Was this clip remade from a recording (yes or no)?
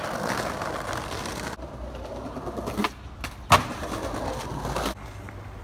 no